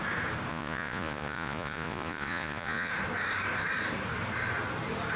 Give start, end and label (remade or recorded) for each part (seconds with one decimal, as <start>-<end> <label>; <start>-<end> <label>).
0.0-0.5 recorded; 0.5-2.9 remade; 2.9-5.2 recorded